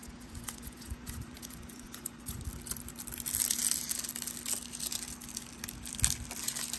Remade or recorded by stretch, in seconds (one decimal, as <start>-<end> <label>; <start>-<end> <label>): 0.0-2.4 remade; 2.4-6.8 recorded